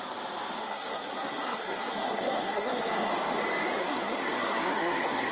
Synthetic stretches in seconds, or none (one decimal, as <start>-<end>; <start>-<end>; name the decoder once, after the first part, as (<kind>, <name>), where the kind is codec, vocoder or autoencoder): 0.6-3.1 (codec, SNAC); 3.8-5.3